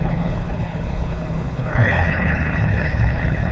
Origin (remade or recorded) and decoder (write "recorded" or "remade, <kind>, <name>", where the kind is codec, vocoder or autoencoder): remade, codec, HILCodec